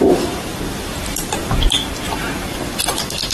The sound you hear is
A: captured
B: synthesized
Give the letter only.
B